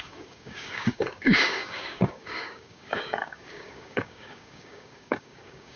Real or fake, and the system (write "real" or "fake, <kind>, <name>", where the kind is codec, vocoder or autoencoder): fake, codec, DAC